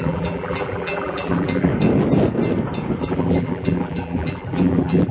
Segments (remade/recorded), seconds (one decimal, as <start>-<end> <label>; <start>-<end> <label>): 0.0-1.7 remade; 1.7-3.0 recorded; 3.0-5.1 remade